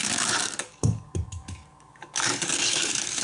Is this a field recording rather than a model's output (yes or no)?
no